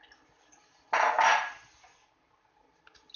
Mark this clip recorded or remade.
recorded